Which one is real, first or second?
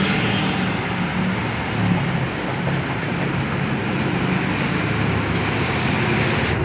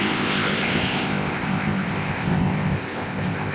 first